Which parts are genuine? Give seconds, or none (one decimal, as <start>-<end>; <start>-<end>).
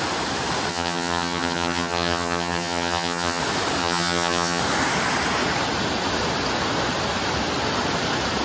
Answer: 0.0-0.7; 3.4-3.8; 4.6-8.4